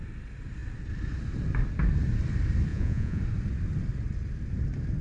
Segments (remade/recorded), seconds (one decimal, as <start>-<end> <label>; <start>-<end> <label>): 0.0-2.7 recorded; 2.7-3.2 remade; 3.2-5.0 recorded